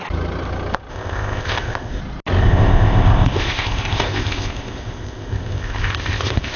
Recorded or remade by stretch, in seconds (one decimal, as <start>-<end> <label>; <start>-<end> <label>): 0.0-0.9 recorded; 0.9-2.0 remade; 2.0-2.4 recorded; 2.4-6.6 remade